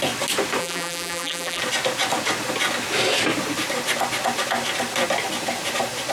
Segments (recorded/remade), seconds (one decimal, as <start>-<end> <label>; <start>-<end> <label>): 0.0-0.6 recorded; 0.6-1.6 remade; 1.6-6.1 recorded